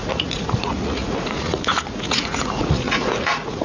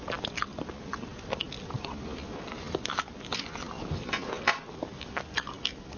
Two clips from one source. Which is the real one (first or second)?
second